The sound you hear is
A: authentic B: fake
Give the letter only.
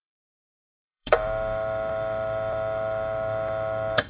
B